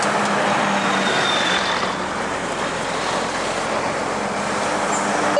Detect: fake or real real